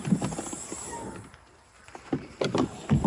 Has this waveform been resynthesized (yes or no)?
no